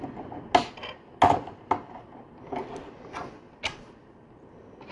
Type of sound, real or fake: real